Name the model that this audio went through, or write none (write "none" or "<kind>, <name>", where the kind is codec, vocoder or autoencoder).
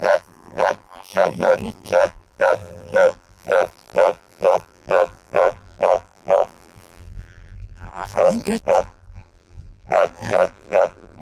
vocoder, BigVGAN v2